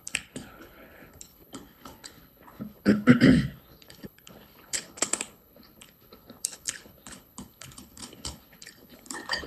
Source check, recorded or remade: remade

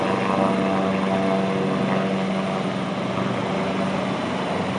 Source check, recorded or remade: recorded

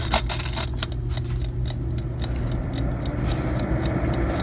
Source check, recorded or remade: recorded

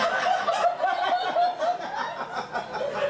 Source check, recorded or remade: recorded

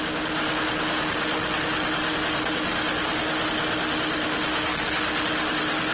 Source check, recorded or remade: recorded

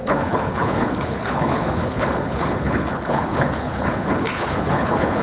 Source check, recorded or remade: remade